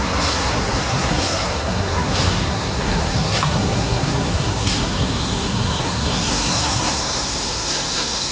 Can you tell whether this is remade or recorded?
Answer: remade